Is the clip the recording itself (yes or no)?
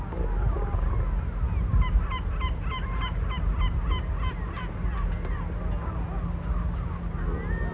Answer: yes